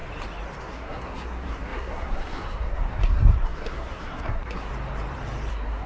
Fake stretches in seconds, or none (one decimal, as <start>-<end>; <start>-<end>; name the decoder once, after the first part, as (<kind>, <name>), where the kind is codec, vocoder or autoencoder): 0.6-4.7 (codec, SNAC); 5.5-5.9